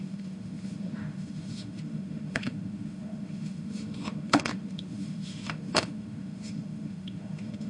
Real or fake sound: fake